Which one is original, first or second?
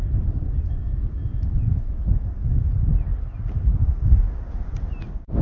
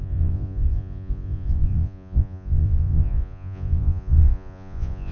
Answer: first